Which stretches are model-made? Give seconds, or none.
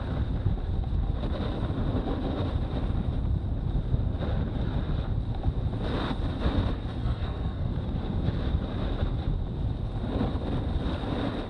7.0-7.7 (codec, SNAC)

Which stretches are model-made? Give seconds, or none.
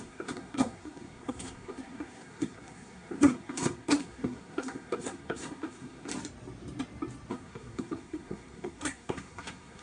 0.0-6.1 (codec, SNAC); 7.3-9.8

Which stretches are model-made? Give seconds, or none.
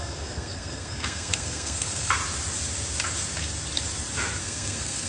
0.0-2.2 (codec, SNAC); 4.4-5.1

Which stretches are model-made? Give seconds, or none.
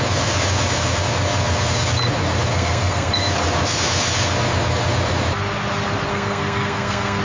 2.5-3.1 (codec, SNAC); 6.1-7.2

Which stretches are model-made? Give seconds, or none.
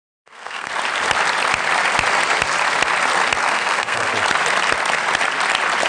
0.0-0.7 (codec, SNAC); 3.4-4.1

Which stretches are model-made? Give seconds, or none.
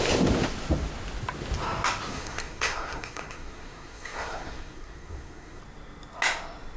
2.1-5.6 (codec, SNAC)